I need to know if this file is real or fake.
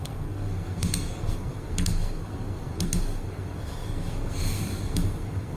fake